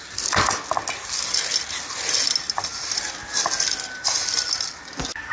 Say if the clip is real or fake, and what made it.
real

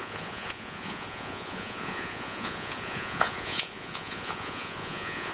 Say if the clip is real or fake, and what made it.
fake, vocoder, Vocos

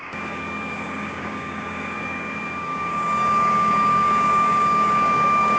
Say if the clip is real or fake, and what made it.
fake, codec, DAC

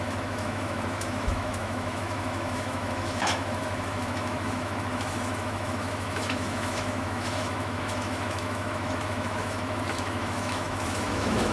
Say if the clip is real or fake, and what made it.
fake, autoencoder, DAC-VAE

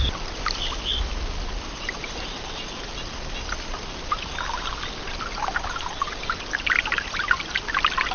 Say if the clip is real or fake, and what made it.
real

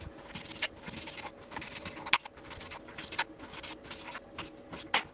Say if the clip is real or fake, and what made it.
real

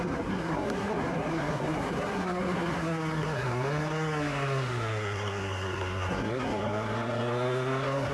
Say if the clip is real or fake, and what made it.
fake, codec, SNAC